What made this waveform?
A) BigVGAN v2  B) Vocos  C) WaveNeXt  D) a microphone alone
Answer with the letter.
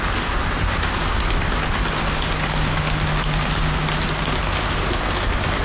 D